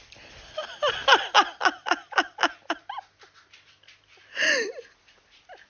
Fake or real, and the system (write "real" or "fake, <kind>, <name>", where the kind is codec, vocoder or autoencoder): real